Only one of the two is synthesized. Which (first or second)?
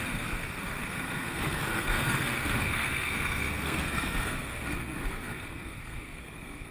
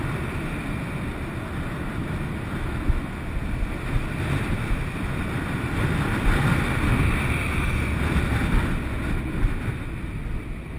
first